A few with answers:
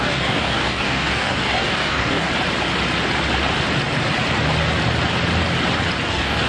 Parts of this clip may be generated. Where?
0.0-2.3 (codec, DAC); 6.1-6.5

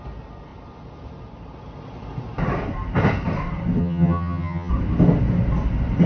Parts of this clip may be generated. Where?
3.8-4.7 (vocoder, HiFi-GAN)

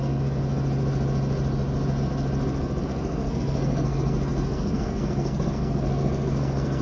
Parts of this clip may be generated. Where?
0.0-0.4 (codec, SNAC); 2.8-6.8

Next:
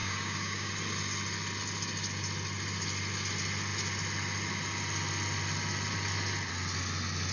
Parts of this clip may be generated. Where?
0.0-0.7 (codec, DAC)

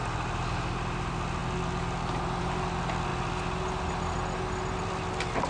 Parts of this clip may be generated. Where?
none

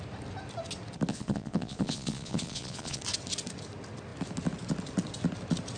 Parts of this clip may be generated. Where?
1.1-3.0 (vocoder, Vocos)

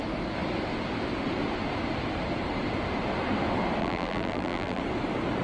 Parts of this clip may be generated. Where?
3.8-4.8 (vocoder, BigVGAN v2)